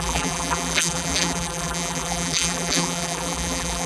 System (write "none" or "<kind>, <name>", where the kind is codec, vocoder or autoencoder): vocoder, BigVGAN v2